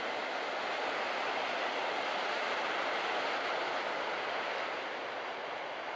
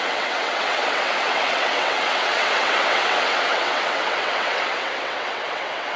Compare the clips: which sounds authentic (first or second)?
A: first